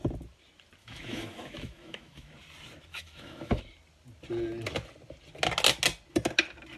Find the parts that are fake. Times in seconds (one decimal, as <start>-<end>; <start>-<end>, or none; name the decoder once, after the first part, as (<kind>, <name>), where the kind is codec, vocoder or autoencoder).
0.8-2.3 (autoencoder, DAC-VAE); 2.9-3.6